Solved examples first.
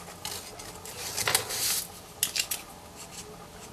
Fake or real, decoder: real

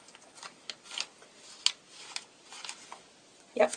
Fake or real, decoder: real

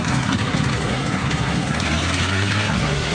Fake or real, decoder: fake, codec, SNAC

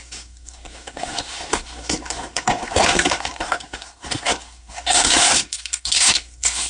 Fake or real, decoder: fake, codec, SNAC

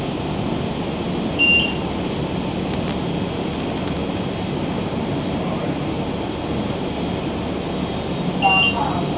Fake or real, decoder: real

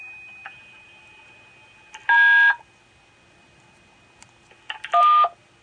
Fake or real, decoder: real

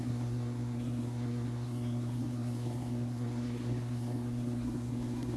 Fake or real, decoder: fake, codec, SNAC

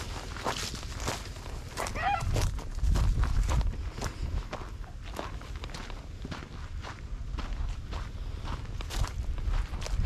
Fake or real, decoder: real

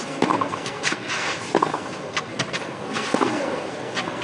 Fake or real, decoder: fake, codec, SNAC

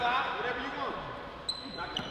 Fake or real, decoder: real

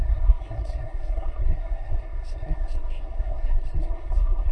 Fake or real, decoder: fake, codec, SNAC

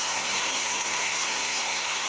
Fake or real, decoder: fake, codec, SNAC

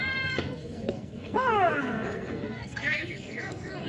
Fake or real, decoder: fake, codec, SNAC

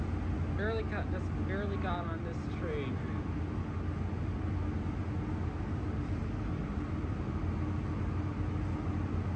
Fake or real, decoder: real